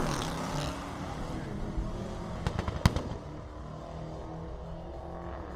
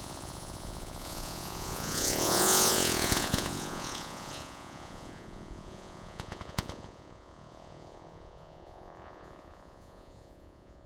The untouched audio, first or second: first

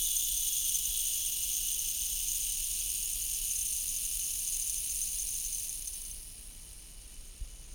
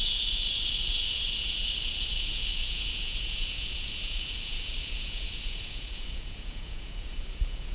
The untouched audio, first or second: first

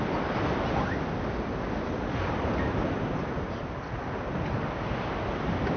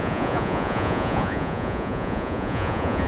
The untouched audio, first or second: first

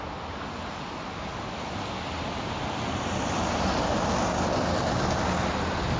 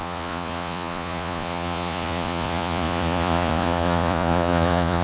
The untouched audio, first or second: first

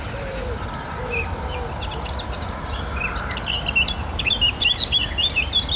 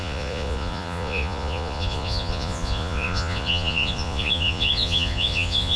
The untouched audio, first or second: first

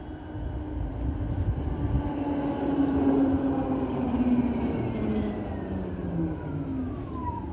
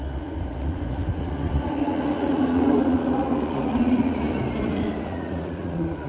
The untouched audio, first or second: first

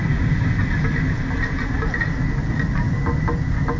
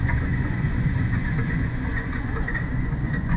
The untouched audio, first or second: first